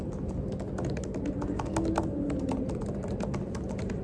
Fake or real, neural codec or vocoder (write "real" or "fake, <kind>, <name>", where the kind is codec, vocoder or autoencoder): real